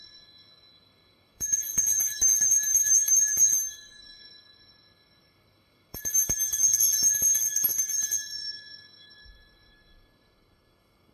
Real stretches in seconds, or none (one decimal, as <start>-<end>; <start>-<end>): none